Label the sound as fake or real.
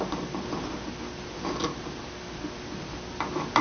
real